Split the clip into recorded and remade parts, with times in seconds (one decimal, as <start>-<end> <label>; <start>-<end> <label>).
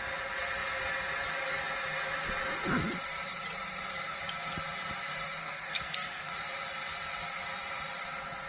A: 0.0-5.4 recorded; 5.4-6.3 remade; 6.3-8.5 recorded